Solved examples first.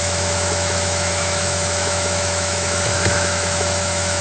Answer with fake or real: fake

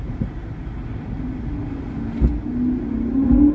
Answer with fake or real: real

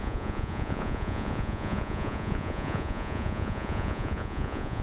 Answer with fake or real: fake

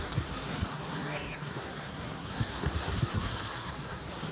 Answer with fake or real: fake